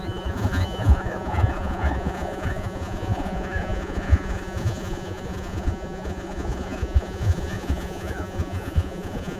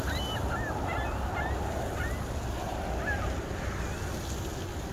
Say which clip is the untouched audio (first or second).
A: second